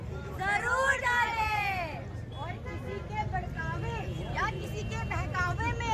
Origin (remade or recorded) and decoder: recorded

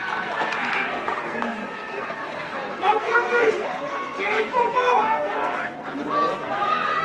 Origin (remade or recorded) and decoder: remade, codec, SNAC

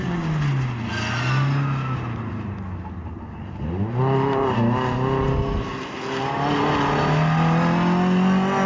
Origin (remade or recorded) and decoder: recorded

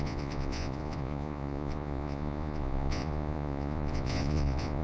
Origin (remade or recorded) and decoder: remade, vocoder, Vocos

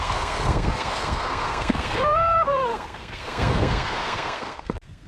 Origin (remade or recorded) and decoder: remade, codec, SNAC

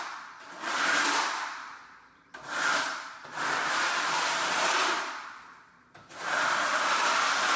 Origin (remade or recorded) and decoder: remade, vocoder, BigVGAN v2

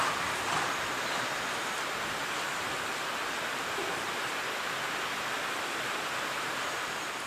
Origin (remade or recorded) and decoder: recorded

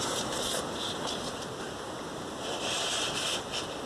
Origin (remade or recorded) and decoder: recorded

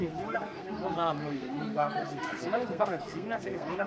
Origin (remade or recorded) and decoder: remade, codec, SNAC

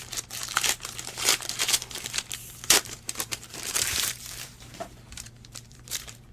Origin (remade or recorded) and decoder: remade, vocoder, BigVGAN v2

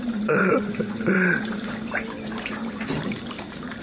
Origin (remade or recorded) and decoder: remade, vocoder, BigVGAN v2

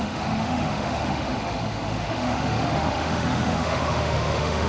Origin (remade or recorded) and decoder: remade, autoencoder, DAC-VAE